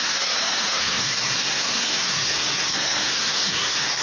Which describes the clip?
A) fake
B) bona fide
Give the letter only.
A